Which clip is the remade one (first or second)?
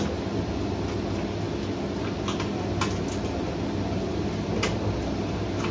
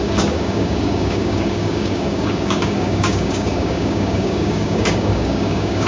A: second